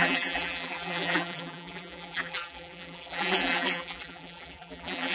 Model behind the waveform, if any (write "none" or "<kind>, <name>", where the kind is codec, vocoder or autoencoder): vocoder, BigVGAN v2